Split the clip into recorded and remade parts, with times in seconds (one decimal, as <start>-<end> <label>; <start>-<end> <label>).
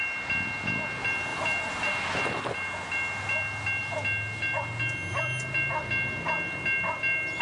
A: 0.0-1.3 recorded; 1.3-1.9 remade; 1.9-7.4 recorded